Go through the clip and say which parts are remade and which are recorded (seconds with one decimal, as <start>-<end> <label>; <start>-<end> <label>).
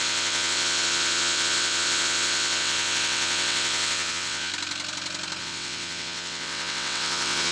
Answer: 0.0-4.5 remade; 4.5-5.4 recorded; 5.4-7.5 remade